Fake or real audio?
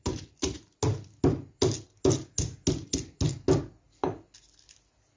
real